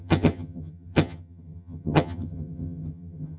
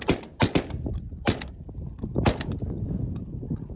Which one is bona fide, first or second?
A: second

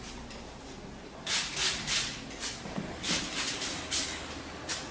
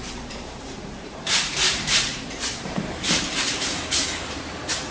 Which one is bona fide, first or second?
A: first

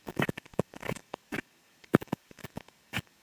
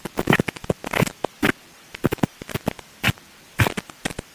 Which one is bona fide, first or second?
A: second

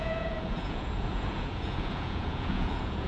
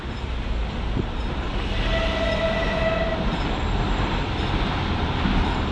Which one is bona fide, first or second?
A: second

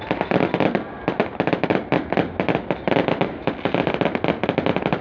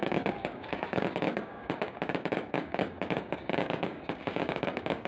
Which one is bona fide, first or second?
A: first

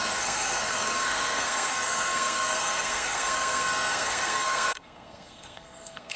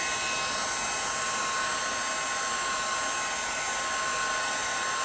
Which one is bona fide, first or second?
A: second